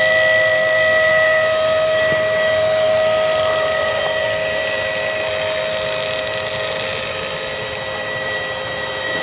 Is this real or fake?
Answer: fake